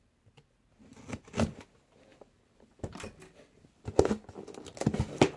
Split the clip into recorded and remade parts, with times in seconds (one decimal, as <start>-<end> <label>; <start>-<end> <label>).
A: 0.0-0.9 recorded; 0.9-1.6 remade; 1.6-2.1 recorded; 2.1-5.4 remade